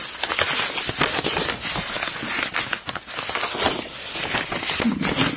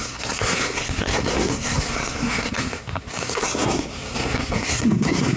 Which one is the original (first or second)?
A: first